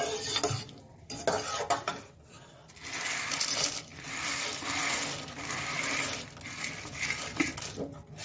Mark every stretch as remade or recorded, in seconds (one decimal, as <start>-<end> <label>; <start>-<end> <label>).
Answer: 0.0-8.2 recorded